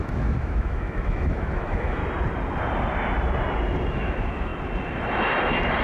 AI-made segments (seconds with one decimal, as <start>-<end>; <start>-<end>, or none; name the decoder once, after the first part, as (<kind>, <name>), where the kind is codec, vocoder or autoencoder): 0.0-2.0 (autoencoder, DAC-VAE); 3.9-4.5